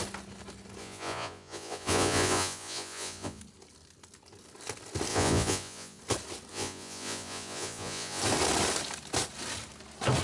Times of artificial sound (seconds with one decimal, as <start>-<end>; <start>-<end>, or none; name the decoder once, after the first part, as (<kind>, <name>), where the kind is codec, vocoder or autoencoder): 0.8-3.4 (vocoder, Vocos); 5.1-6.0; 6.5-8.2